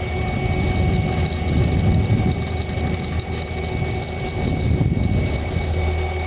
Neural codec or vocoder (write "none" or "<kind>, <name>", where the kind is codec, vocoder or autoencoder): none